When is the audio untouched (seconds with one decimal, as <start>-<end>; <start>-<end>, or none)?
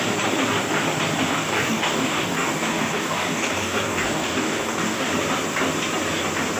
0.0-1.3; 5.1-6.6